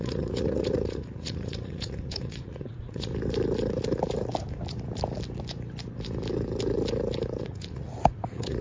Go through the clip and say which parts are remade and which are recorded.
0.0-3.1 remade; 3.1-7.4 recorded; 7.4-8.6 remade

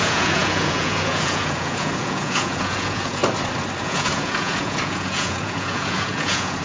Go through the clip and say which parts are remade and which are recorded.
0.0-3.2 remade; 3.2-3.8 recorded; 3.8-6.6 remade

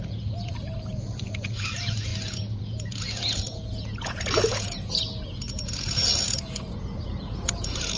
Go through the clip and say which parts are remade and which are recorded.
0.0-8.0 remade

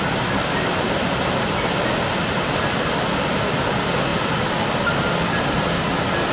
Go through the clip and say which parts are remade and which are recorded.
0.0-6.3 recorded

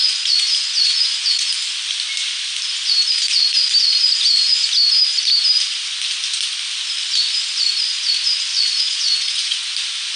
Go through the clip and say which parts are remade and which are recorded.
0.0-1.5 remade; 1.5-8.5 recorded; 8.5-9.7 remade; 9.7-10.2 recorded